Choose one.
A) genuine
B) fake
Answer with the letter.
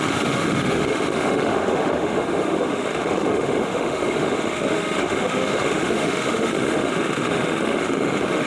B